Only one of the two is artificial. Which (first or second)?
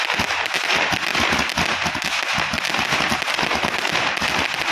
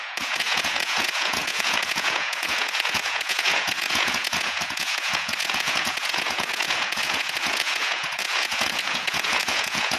second